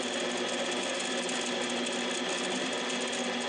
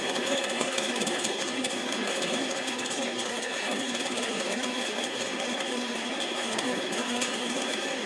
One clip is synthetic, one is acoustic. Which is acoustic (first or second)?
first